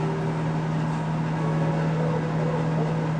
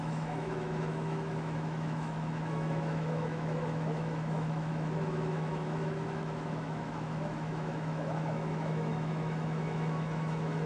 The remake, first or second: second